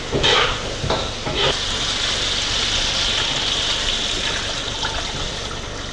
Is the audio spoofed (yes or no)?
no